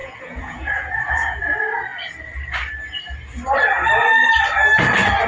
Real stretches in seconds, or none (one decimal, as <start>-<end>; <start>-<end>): 1.4-5.3